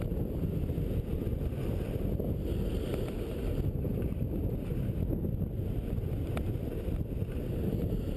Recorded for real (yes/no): yes